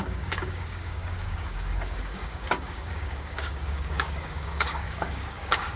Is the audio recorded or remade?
remade